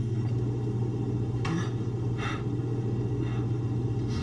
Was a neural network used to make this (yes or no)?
no